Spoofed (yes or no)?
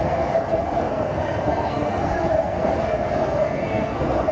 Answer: yes